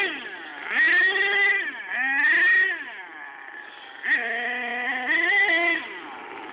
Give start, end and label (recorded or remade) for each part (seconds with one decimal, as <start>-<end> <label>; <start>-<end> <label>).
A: 0.0-6.5 recorded